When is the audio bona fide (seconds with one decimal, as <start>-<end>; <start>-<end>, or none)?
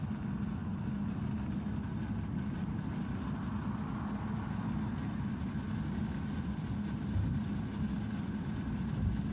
0.0-9.3